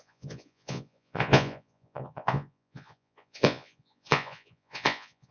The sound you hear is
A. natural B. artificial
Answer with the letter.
B